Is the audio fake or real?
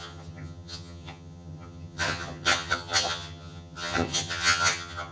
fake